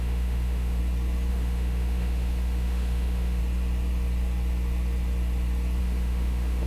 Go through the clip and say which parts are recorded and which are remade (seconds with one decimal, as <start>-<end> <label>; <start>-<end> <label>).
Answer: 0.0-0.8 remade; 0.8-1.3 recorded; 1.3-3.4 remade; 3.4-5.8 recorded; 5.8-6.7 remade